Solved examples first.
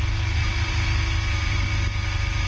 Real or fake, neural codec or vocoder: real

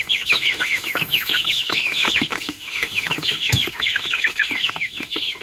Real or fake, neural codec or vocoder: fake, autoencoder, DAC-VAE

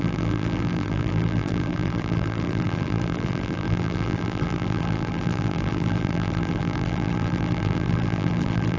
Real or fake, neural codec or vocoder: fake, vocoder, BigVGAN v2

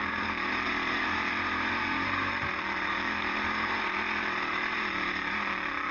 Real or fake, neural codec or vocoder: fake, vocoder, BigVGAN v2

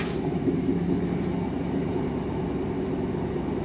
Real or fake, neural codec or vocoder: real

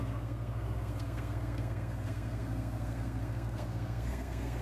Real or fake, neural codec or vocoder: fake, codec, SNAC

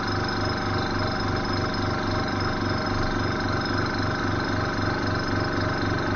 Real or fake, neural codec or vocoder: real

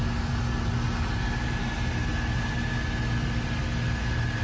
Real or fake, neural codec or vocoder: real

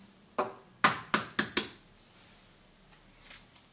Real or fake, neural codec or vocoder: real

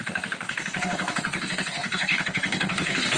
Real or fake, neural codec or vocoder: fake, codec, DAC